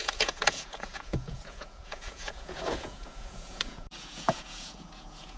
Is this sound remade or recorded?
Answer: remade